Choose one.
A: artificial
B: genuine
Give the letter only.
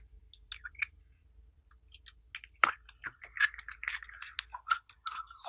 B